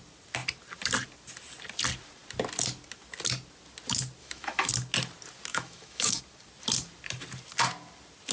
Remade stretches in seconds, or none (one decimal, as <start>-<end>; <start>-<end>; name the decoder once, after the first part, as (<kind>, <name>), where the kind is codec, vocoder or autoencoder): 4.2-4.7 (autoencoder, DAC-VAE); 5.5-6.2